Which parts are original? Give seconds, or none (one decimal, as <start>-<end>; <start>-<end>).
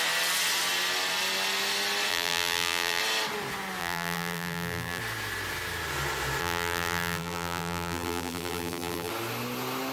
0.0-2.1; 3.0-3.8; 5.0-6.4; 9.1-9.9